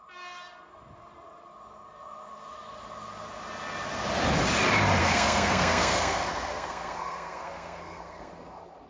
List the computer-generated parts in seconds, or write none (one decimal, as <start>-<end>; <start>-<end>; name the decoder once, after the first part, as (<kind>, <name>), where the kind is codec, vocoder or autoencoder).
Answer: 5.0-8.3 (codec, SNAC)